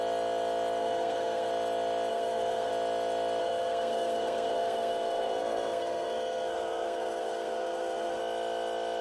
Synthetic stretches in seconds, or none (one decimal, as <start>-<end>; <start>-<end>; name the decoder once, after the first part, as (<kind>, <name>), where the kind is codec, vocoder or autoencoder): 0.8-1.5 (codec, SNAC); 2.1-2.7; 3.4-8.2